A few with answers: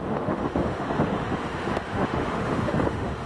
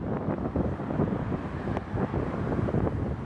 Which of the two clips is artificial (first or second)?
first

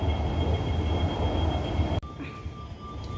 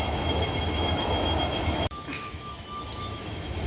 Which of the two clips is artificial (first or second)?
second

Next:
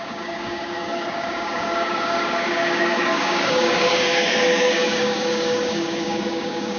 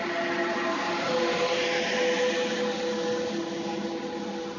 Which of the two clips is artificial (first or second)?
first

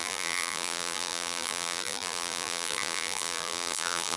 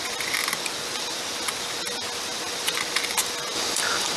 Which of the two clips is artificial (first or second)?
first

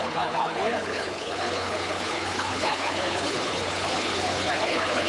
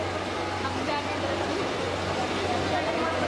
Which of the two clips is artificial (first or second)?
first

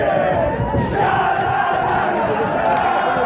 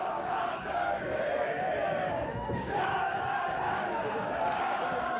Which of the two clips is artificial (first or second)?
second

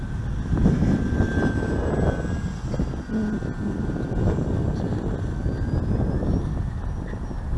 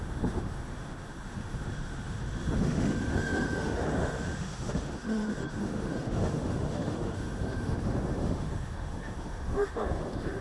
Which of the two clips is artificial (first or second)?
second